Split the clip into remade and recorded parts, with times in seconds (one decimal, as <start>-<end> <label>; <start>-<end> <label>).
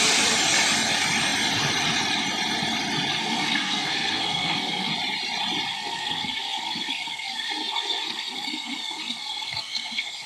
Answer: 0.0-3.2 recorded; 3.2-4.9 remade; 4.9-5.7 recorded; 5.7-10.3 remade